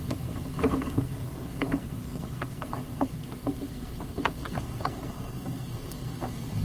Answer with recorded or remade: remade